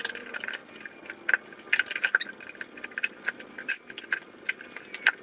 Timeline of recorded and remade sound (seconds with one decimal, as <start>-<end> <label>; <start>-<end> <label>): 0.0-5.2 recorded